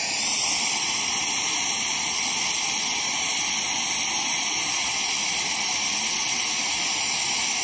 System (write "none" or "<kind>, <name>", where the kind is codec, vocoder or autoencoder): vocoder, BigVGAN v2